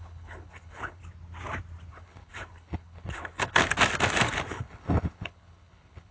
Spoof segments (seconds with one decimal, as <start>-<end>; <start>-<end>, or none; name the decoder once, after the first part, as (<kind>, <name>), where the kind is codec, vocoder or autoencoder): 0.0-1.0 (codec, HILCodec); 1.9-3.6; 4.5-6.1